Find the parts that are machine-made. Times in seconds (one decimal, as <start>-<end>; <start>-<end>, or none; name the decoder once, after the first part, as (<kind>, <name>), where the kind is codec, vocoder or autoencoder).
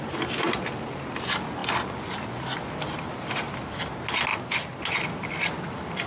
4.3-4.8 (vocoder, BigVGAN v2)